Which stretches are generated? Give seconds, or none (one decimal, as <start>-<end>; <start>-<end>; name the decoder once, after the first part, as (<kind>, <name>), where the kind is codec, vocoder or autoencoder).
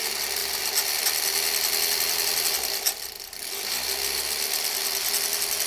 none